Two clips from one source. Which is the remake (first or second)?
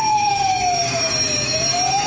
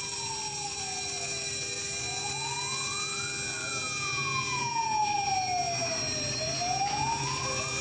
first